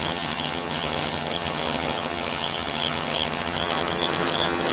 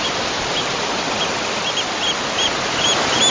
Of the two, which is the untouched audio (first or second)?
second